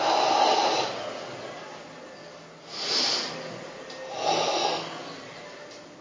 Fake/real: real